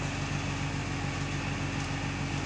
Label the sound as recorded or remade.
recorded